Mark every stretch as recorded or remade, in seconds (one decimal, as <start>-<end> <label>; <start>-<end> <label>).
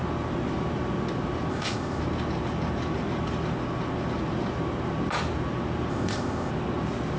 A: 0.0-1.5 recorded; 1.5-2.0 remade; 2.0-5.9 recorded; 5.9-6.5 remade; 6.5-7.2 recorded